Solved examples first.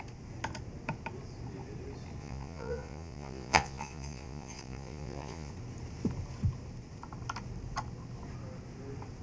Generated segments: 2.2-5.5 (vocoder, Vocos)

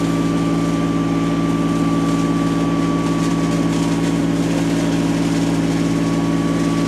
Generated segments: none

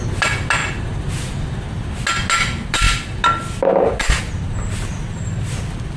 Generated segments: none

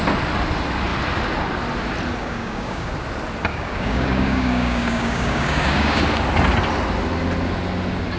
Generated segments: 2.2-2.9 (codec, DAC); 3.5-6.0

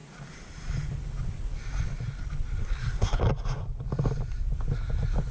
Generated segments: 2.6-3.2 (codec, SNAC)

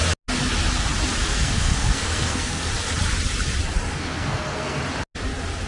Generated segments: 1.3-2.7 (codec, SNAC); 3.9-4.8

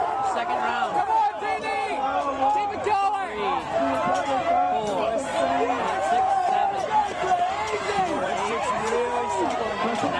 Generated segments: 0.0-2.0 (vocoder, BigVGAN v2); 4.5-10.2